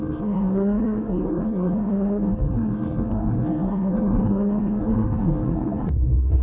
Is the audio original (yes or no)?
no